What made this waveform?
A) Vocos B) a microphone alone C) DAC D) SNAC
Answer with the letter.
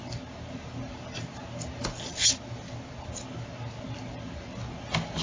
B